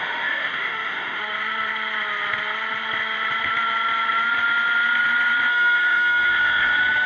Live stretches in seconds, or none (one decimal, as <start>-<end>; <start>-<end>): 1.2-5.5